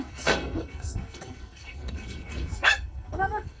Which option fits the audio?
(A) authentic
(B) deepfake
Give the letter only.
B